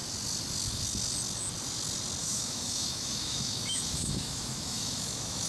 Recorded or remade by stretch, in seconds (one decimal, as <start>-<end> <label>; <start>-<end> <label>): 0.0-2.2 recorded; 2.2-5.5 remade